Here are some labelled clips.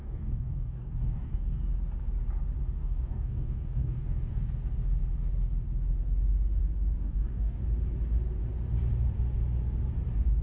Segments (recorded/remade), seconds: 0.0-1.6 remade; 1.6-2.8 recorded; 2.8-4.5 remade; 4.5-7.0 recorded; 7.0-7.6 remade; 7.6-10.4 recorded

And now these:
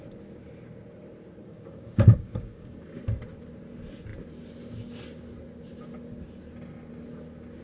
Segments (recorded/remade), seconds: 0.0-1.4 recorded; 1.4-3.0 remade; 3.0-7.6 recorded

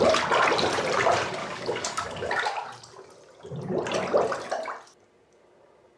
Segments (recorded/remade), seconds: 0.0-1.4 recorded; 1.4-2.3 remade; 2.3-6.0 recorded

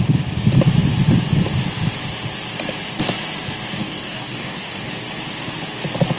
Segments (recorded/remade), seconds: 0.0-3.8 recorded; 3.8-4.9 remade; 4.9-6.2 recorded